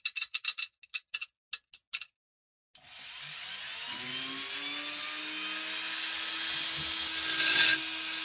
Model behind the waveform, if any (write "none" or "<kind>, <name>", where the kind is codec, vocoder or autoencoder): none